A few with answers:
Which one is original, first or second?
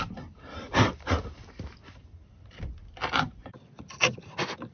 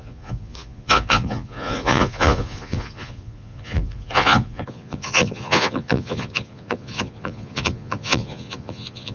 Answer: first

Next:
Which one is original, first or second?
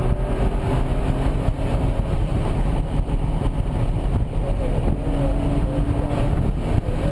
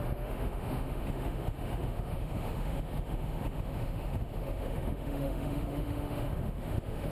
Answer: first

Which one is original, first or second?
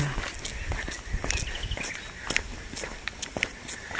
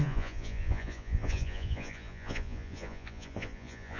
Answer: first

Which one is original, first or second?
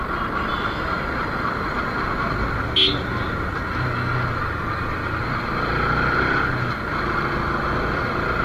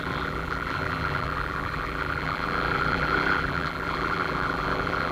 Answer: first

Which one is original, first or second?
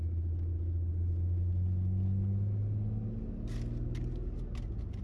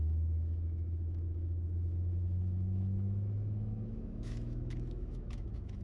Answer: first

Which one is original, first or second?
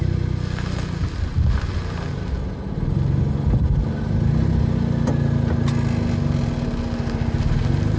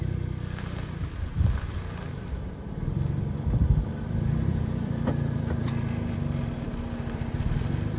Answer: first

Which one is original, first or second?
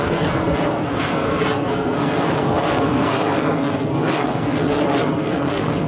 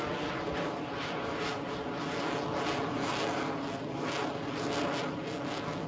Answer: second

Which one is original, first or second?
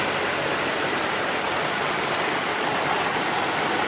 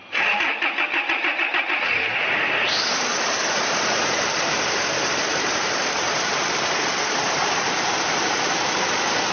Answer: first